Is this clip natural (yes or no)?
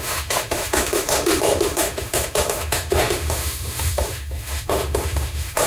no